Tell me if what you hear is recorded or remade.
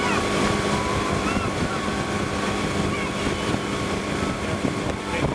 remade